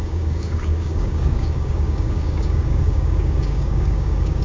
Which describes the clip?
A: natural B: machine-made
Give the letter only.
B